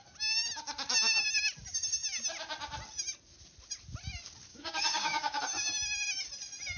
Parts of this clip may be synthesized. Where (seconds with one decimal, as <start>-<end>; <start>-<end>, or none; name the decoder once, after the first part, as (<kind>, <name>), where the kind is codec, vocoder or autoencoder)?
4.5-5.4 (codec, DAC)